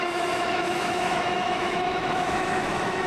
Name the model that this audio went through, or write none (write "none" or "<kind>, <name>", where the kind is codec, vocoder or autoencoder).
autoencoder, DAC-VAE